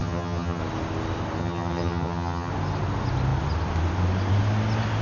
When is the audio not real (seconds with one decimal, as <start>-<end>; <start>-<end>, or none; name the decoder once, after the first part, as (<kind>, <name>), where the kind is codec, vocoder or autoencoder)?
0.0-0.6 (vocoder, HiFi-GAN); 1.4-2.5